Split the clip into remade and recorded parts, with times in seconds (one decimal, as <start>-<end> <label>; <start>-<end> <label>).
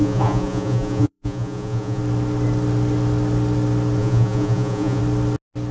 0.0-2.0 remade; 2.0-4.0 recorded; 4.0-5.0 remade; 5.0-5.7 recorded